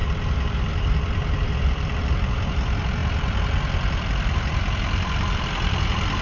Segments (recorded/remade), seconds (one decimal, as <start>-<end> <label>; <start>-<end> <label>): 0.0-6.2 recorded